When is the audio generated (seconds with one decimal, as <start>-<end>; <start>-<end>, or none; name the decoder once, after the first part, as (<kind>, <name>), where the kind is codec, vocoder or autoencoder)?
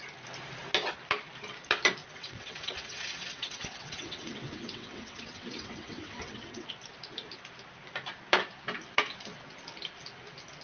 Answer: 2.0-6.7 (vocoder, WaveNeXt)